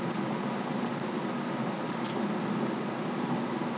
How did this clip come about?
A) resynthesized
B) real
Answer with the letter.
B